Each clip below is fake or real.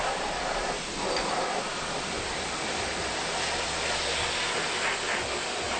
real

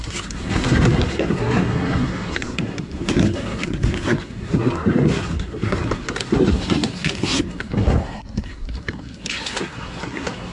fake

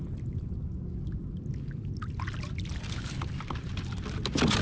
real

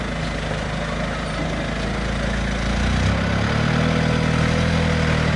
real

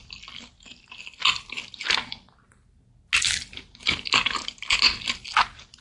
real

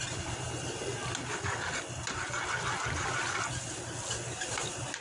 real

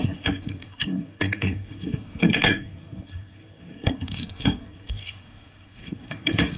fake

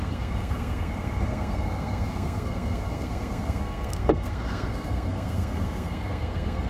fake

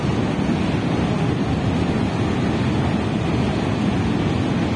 real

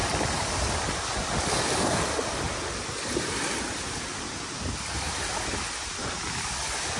real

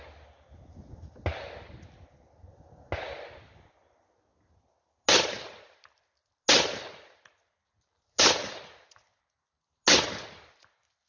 real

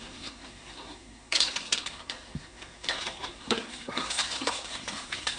fake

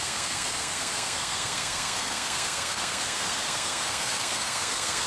fake